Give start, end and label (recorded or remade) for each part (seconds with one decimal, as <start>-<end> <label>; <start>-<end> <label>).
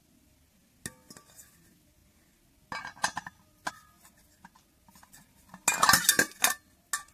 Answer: 0.0-7.1 recorded